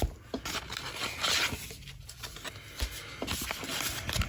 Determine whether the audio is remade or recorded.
recorded